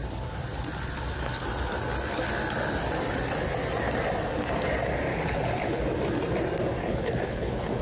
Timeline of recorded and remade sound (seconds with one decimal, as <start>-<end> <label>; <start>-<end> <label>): 0.0-5.1 recorded; 5.1-5.8 remade; 5.8-6.8 recorded; 6.8-7.8 remade

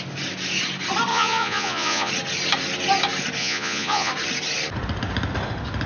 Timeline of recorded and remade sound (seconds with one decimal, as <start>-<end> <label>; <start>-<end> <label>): 0.0-1.1 recorded; 1.1-2.1 remade; 2.1-3.4 recorded; 3.4-4.1 remade; 4.1-5.9 recorded

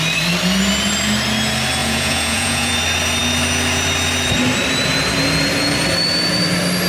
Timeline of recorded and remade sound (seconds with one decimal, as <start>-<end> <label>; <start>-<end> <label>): 0.0-1.8 recorded; 1.8-2.7 remade; 2.7-6.9 recorded

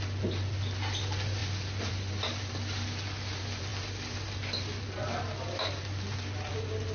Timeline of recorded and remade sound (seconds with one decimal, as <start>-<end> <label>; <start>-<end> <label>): 0.0-6.9 recorded

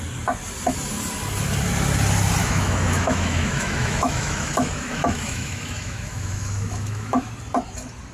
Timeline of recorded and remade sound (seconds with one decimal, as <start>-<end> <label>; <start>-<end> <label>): 0.0-2.4 recorded; 2.4-7.3 remade; 7.3-8.1 recorded

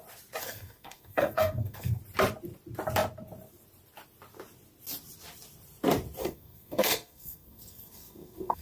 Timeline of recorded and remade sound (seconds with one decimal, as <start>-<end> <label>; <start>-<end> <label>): 0.0-0.4 recorded; 0.4-2.0 remade; 2.0-6.2 recorded; 6.2-8.6 remade

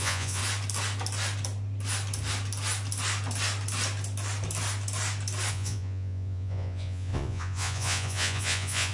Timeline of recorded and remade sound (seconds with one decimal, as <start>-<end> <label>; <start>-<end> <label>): 0.0-0.4 remade; 0.4-5.5 recorded; 5.5-8.9 remade